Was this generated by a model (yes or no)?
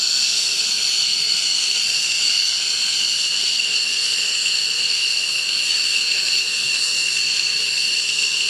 yes